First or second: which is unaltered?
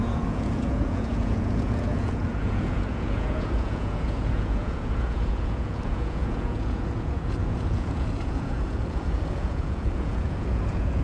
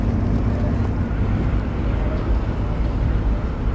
second